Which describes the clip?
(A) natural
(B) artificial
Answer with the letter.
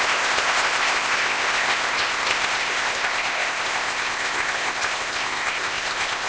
B